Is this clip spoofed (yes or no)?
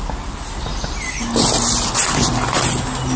no